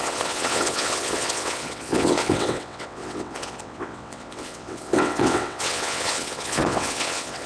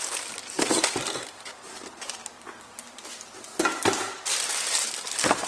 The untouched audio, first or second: second